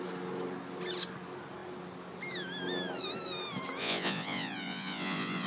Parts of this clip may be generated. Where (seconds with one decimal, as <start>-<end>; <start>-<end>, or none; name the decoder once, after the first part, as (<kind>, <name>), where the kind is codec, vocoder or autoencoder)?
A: 3.8-5.5 (vocoder, Vocos)

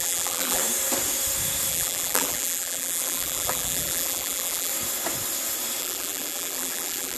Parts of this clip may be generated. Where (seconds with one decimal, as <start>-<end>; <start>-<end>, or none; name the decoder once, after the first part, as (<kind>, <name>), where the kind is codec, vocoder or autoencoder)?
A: 0.0-0.6 (vocoder, BigVGAN v2); 1.7-4.7; 5.8-7.2

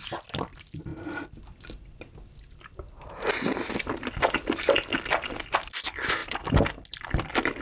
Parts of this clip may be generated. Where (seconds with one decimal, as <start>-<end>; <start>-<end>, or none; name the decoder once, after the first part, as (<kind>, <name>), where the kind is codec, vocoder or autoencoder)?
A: none

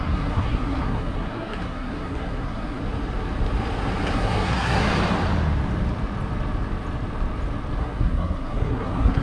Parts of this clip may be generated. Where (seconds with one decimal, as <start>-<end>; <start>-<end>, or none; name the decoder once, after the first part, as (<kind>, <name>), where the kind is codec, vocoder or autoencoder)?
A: 0.0-2.8 (codec, SNAC); 4.1-4.9; 7.8-9.2

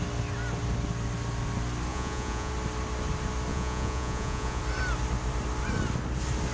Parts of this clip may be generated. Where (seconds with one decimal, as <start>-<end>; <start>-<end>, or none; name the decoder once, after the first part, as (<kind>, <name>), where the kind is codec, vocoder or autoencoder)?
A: 1.9-2.5 (vocoder, Vocos); 3.5-4.6

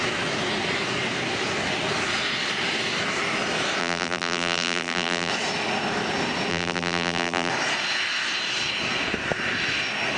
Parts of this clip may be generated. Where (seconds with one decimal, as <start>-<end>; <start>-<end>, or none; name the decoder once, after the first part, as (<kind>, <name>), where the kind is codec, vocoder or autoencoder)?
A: 3.8-5.3 (vocoder, BigVGAN v2); 6.5-7.5

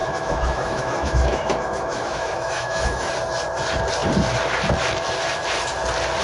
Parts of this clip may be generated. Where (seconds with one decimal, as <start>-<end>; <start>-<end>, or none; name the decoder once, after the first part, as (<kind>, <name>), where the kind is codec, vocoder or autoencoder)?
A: 0.0-3.1 (autoencoder, DAC-VAE)

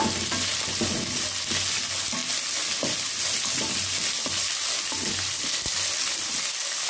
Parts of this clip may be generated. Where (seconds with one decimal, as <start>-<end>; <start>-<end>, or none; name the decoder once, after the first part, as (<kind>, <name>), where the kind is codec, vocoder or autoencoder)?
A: none